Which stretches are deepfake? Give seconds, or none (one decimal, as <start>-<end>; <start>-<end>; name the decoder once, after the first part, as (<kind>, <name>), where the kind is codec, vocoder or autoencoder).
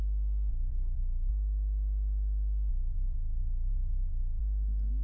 0.5-1.3 (vocoder, BigVGAN v2); 2.7-4.4